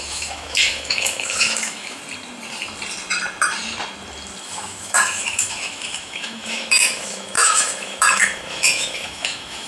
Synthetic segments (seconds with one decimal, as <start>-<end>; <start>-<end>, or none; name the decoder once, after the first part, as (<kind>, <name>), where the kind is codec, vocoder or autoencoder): 0.0-2.0 (autoencoder, DAC-VAE); 4.4-9.7